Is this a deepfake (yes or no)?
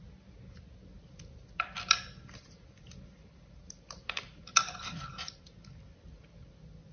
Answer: no